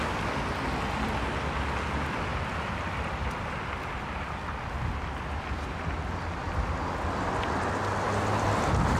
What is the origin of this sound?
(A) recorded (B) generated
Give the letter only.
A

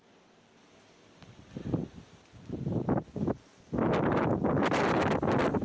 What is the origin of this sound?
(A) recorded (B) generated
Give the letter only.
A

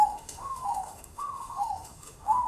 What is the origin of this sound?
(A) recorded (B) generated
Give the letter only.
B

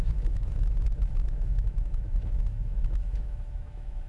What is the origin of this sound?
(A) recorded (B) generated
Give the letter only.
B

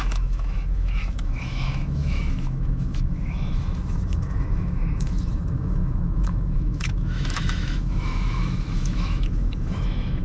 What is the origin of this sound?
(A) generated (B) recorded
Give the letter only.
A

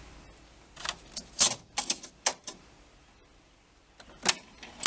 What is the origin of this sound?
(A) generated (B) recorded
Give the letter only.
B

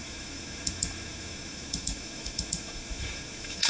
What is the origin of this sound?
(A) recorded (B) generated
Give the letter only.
B